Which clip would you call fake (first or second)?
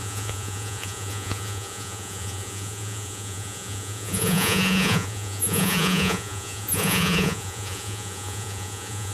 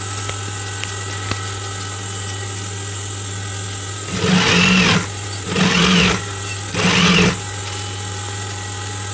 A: first